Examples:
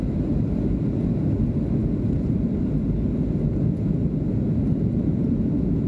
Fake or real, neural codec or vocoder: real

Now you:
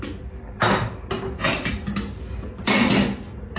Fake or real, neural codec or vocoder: real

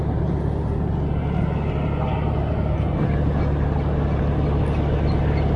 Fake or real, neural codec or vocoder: real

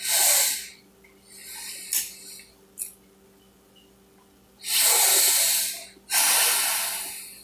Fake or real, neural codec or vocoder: real